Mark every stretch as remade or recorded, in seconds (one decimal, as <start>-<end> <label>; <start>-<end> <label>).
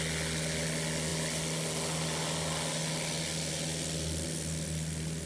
0.0-5.3 recorded